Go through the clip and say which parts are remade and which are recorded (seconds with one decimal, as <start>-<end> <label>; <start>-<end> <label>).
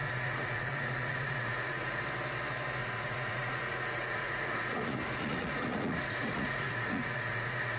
0.0-2.0 remade; 2.0-2.8 recorded; 2.8-7.8 remade